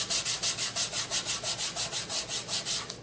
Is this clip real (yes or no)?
yes